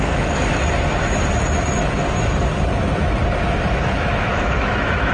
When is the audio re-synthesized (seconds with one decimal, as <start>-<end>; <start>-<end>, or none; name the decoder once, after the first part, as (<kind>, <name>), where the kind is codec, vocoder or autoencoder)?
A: 0.0-0.6 (autoencoder, DAC-VAE); 3.7-5.1